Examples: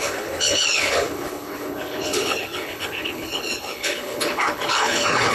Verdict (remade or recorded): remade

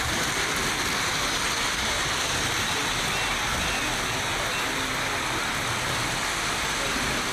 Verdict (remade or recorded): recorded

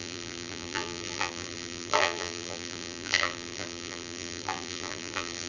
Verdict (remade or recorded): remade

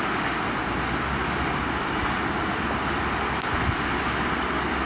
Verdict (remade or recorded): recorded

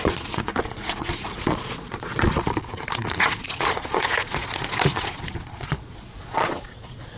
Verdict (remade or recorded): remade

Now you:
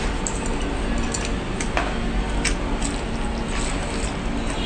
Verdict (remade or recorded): recorded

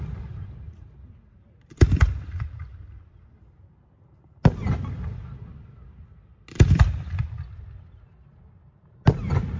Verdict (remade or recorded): recorded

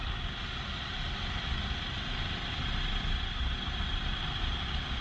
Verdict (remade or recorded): recorded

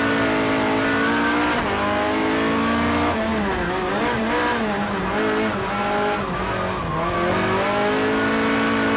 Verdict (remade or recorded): recorded